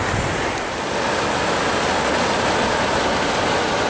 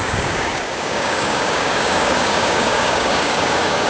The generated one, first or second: second